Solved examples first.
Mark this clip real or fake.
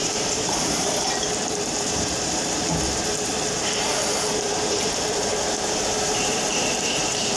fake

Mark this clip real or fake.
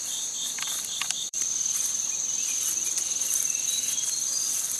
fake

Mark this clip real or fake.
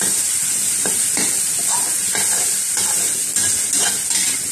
real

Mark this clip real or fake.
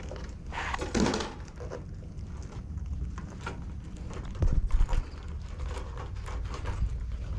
real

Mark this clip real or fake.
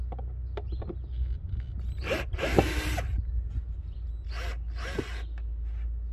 real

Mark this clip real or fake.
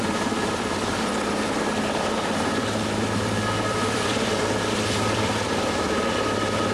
fake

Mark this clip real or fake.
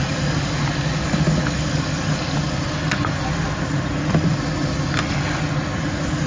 real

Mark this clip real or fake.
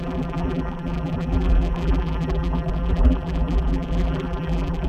fake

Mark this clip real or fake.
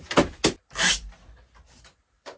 real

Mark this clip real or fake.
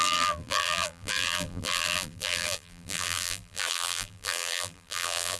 fake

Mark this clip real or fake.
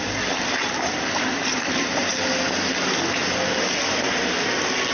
real